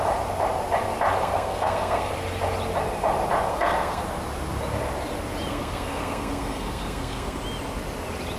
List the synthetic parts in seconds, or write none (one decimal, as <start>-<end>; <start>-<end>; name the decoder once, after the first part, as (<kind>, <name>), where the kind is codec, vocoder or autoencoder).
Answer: 1.2-2.1 (codec, SNAC); 3.5-4.0; 5.5-7.4